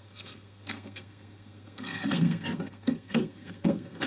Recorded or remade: remade